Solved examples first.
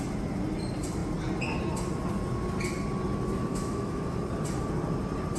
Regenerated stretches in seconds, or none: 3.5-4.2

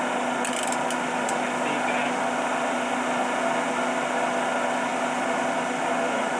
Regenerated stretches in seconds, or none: none

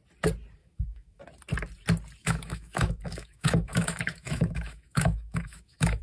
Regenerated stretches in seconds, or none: 0.6-1.2; 2.2-6.0

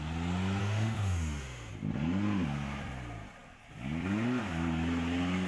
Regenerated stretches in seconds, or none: 0.6-1.7

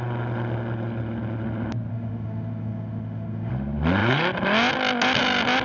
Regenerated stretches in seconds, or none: 1.9-3.5